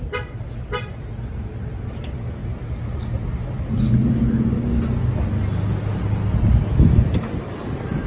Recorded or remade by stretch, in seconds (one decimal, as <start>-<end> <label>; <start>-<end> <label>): 0.0-8.1 recorded